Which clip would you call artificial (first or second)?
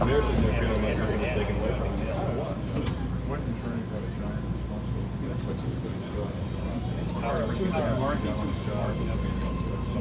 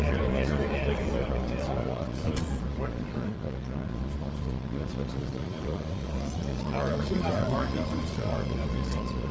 second